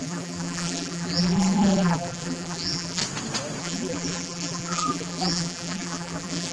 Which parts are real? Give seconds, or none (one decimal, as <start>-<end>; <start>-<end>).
3.0-3.6